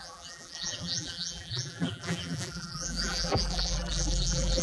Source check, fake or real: fake